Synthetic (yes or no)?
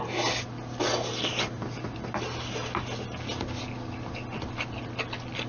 no